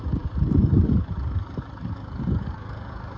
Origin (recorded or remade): remade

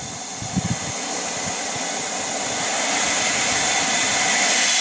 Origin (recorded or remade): recorded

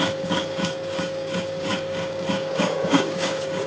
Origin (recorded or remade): remade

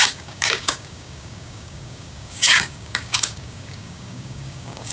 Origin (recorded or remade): remade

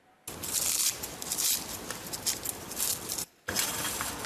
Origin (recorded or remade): recorded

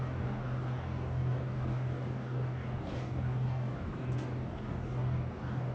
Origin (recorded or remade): remade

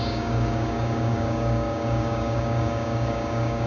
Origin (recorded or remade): remade